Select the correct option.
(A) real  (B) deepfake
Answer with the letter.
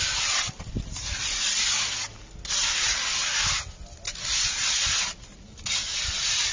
A